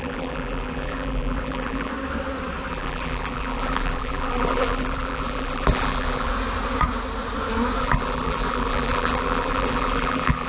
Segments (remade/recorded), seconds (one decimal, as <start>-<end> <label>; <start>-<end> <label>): 0.0-1.9 remade; 1.9-2.7 recorded; 2.7-6.3 remade; 6.3-7.8 recorded; 7.8-10.5 remade